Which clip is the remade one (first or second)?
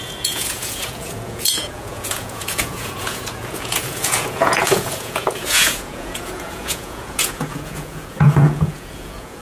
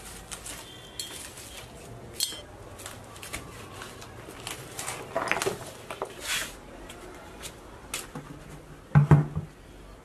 first